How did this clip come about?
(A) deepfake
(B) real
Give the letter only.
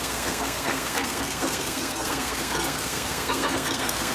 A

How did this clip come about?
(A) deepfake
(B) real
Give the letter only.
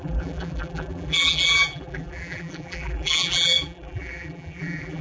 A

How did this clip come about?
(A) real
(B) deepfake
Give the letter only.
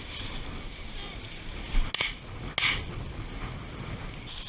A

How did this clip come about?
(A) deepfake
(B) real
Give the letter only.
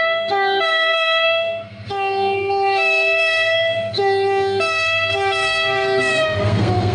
A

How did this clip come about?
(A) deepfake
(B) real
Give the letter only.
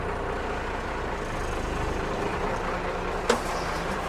B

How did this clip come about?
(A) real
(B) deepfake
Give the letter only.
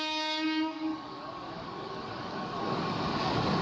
B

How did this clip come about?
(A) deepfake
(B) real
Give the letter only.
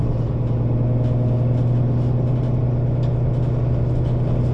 B